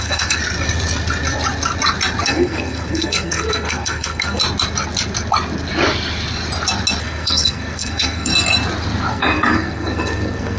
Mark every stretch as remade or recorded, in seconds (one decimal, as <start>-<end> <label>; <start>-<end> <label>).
0.0-0.4 remade; 0.4-2.2 recorded; 2.2-4.4 remade; 4.4-7.0 recorded; 7.0-8.3 remade; 8.3-9.1 recorded; 9.1-10.6 remade